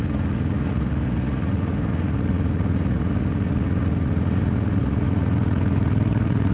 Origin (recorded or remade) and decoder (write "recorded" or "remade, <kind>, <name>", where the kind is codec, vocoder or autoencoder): remade, vocoder, Vocos